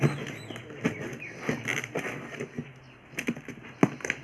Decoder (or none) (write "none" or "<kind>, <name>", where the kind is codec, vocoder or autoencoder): none